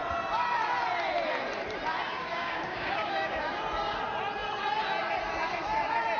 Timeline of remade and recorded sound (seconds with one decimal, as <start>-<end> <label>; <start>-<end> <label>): 0.0-2.1 recorded; 2.1-3.4 remade; 3.4-6.2 recorded